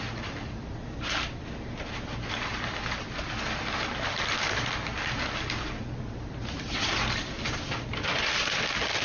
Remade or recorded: remade